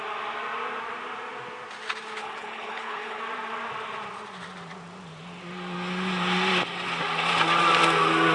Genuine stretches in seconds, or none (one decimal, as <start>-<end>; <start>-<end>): 0.0-2.2; 3.2-8.3